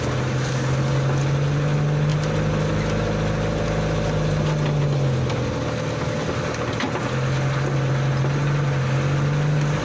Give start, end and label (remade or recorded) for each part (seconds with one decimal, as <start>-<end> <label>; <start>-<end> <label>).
0.0-9.8 recorded